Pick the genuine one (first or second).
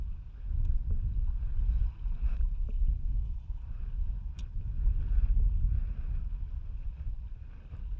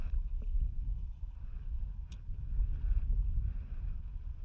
first